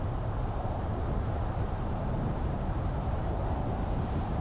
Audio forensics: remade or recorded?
remade